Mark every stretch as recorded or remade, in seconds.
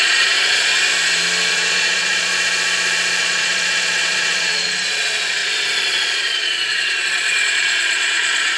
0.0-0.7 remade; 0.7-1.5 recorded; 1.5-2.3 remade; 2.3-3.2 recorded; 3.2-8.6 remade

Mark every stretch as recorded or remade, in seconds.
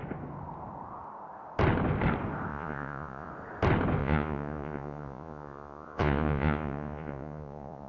0.0-2.5 recorded; 2.5-3.3 remade; 3.3-4.0 recorded; 4.0-7.9 remade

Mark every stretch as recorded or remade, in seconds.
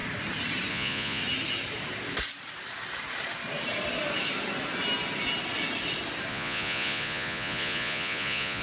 0.0-0.7 recorded; 0.7-1.2 remade; 1.2-6.3 recorded; 6.3-8.6 remade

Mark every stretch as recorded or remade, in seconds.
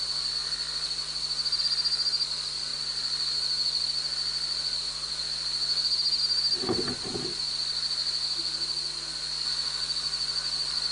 0.0-10.9 recorded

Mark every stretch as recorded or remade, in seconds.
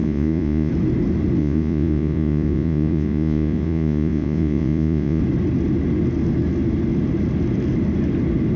0.0-0.7 remade; 0.7-1.4 recorded; 1.4-5.2 remade; 5.2-8.6 recorded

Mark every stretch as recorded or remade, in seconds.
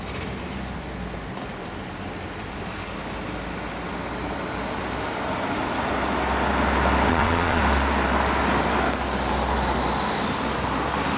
0.0-7.1 recorded; 7.1-7.6 remade; 7.6-11.2 recorded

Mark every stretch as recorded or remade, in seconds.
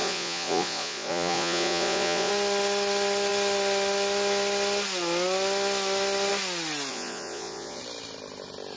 0.0-2.3 remade; 2.3-6.9 recorded; 6.9-7.8 remade; 7.8-8.8 recorded